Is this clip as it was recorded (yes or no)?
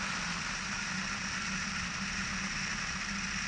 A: yes